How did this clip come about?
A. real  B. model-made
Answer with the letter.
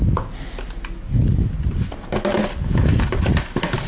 A